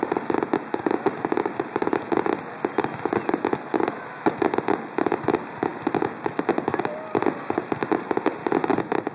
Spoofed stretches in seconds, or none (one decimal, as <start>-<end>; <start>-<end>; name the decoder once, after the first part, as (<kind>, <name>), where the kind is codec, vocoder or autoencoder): none